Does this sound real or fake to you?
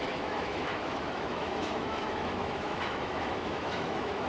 fake